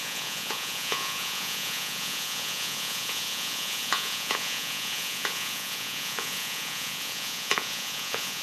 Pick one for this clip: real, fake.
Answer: fake